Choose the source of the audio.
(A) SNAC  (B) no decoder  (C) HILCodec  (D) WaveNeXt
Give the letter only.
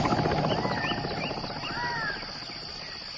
B